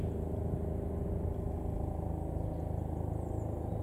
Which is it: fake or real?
real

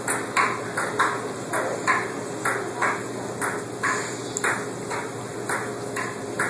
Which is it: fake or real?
real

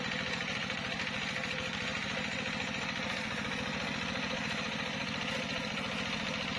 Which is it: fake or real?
real